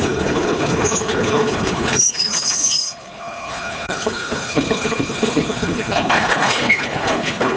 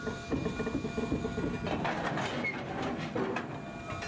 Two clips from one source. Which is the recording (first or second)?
second